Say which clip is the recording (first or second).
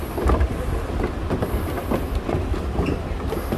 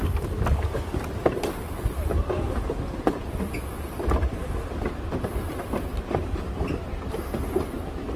first